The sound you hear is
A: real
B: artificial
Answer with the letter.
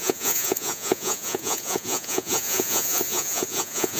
B